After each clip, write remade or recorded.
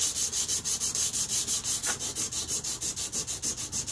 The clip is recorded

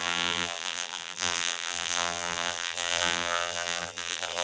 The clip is remade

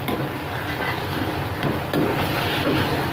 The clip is recorded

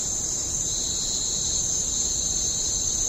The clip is remade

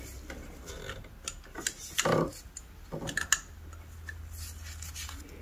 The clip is recorded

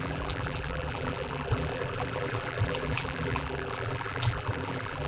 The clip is remade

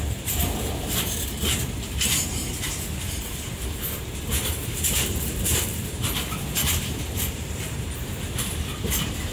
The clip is remade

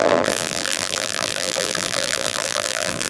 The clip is remade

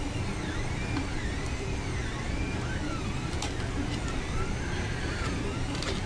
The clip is remade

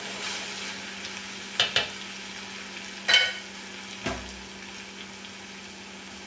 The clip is recorded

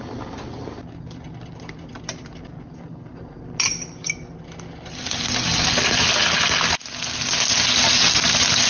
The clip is recorded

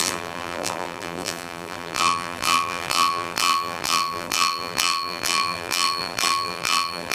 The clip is remade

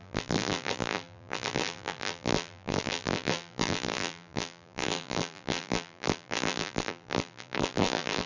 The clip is remade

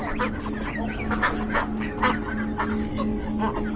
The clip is recorded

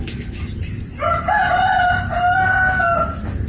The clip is recorded